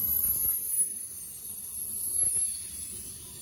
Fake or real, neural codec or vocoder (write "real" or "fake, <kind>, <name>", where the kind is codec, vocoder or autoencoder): real